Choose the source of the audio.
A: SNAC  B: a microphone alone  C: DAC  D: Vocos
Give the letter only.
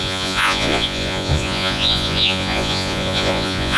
D